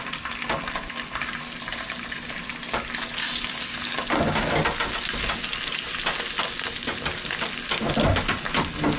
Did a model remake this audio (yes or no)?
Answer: no